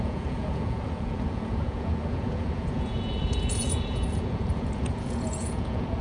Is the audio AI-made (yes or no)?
yes